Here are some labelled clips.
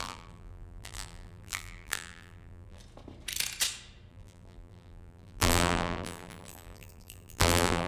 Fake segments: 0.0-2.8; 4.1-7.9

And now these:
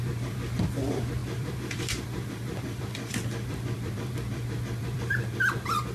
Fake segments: 0.0-5.9

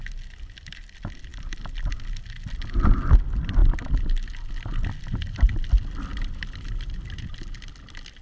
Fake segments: 6.1-6.7

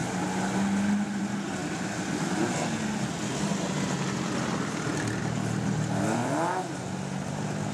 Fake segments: none

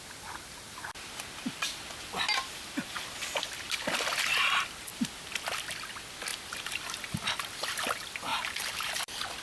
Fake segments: 8.3-8.9

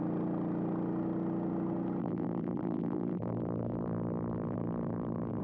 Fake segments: 2.0-5.4